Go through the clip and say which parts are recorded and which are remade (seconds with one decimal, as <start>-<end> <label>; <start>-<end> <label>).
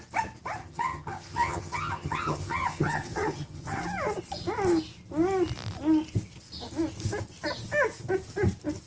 0.0-0.6 recorded; 0.6-3.8 remade; 3.8-8.9 recorded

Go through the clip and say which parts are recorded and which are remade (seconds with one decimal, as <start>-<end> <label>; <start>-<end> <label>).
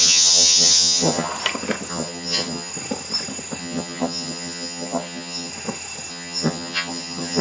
0.0-1.3 remade; 1.3-1.9 recorded; 1.9-2.7 remade; 2.7-3.6 recorded; 3.6-5.5 remade; 5.5-6.1 recorded; 6.1-7.4 remade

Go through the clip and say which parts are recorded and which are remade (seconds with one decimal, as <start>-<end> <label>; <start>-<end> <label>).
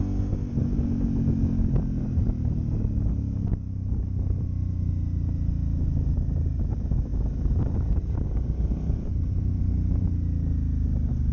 0.0-11.3 recorded